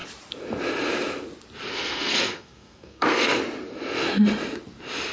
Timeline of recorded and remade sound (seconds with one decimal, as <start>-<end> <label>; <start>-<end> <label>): 0.0-1.7 recorded; 1.7-3.4 remade; 3.4-5.1 recorded